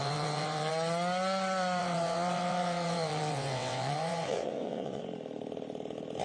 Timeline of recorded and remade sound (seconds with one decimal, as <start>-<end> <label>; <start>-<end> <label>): 0.0-0.7 remade; 0.7-1.8 recorded; 1.8-5.0 remade; 5.0-6.2 recorded